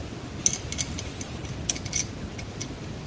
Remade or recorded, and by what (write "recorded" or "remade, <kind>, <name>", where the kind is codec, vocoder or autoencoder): recorded